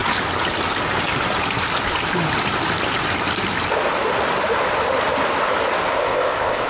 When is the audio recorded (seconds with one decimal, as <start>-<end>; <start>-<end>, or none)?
0.0-5.9

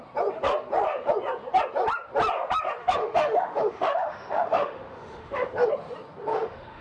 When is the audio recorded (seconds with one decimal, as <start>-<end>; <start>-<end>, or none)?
0.0-2.8; 5.7-6.3

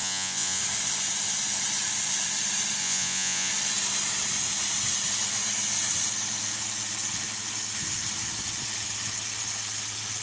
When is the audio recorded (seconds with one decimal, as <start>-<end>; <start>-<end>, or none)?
0.6-2.8; 3.5-10.2

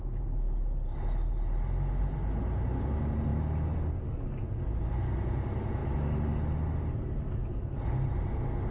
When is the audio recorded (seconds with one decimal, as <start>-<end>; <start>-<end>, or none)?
0.0-8.7

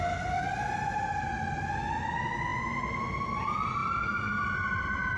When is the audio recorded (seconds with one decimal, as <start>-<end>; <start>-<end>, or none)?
0.0-5.2

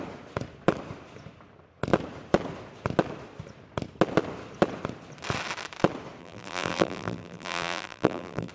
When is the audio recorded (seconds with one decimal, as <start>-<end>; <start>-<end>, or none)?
0.0-6.2